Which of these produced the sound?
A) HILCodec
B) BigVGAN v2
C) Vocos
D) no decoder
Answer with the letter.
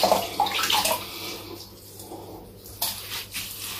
D